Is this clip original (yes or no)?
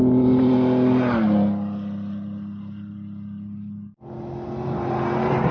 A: yes